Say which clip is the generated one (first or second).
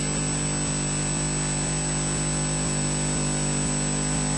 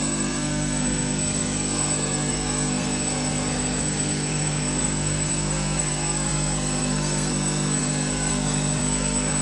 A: second